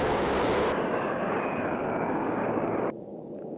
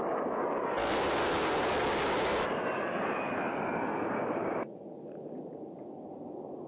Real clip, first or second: second